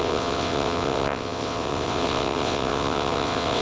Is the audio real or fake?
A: fake